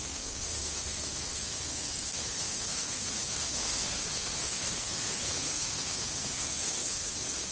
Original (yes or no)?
no